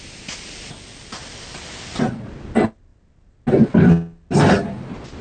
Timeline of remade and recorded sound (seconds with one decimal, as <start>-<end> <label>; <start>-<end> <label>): 0.0-5.2 recorded